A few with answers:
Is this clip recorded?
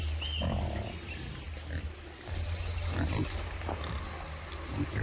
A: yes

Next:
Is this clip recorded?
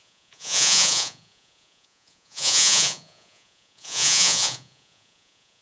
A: no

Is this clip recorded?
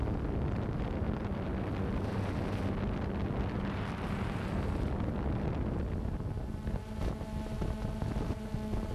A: yes